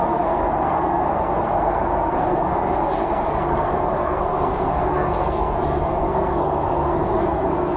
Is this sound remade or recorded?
remade